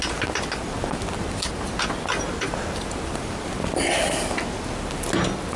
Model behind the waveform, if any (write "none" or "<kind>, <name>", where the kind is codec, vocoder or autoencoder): none